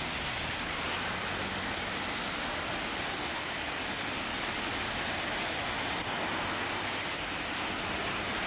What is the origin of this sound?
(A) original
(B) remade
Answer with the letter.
A